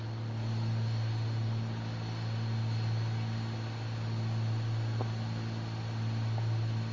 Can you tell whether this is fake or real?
real